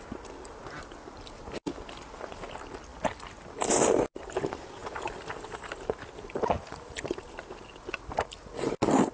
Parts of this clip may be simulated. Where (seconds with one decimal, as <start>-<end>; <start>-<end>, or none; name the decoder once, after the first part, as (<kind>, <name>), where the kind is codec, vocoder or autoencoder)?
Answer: none